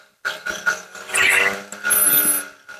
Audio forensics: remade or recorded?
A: recorded